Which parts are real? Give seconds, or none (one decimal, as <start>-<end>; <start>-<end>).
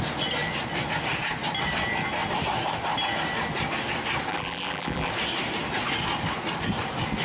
0.0-4.3; 5.1-7.2